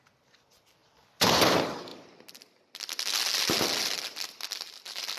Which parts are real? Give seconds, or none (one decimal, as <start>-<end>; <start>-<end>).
0.0-0.8; 1.5-5.2